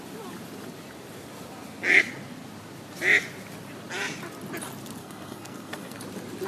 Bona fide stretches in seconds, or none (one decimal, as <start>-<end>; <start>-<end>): 0.0-5.0; 6.0-6.5